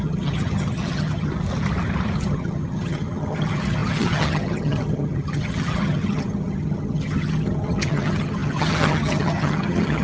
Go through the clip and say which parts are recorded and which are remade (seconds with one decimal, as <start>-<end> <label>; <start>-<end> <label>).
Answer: 0.0-1.3 remade; 1.3-2.2 recorded; 2.2-10.0 remade